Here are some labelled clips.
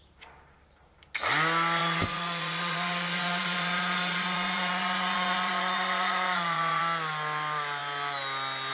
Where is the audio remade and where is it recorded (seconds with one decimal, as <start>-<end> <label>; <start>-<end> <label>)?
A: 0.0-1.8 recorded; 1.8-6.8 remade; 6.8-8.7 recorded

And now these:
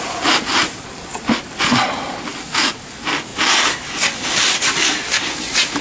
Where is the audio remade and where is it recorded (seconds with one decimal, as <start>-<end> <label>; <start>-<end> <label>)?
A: 0.0-5.8 recorded

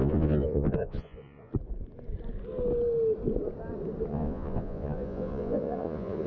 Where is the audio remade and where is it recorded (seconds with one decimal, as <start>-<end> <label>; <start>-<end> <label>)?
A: 0.0-1.5 remade; 1.5-4.1 recorded; 4.1-6.3 remade

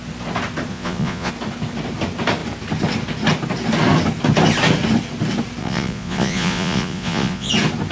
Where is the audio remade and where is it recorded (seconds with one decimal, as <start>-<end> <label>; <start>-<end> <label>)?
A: 0.0-0.7 recorded; 0.7-1.3 remade; 1.3-5.6 recorded; 5.6-7.5 remade; 7.5-7.9 recorded

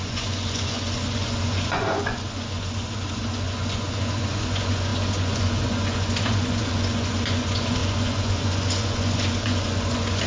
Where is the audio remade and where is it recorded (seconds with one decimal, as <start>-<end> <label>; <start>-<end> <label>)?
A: 0.0-10.3 remade

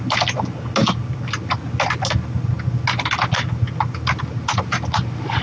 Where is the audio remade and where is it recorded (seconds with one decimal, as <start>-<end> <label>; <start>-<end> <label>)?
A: 0.0-5.4 recorded